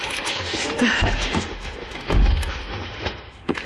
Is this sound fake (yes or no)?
yes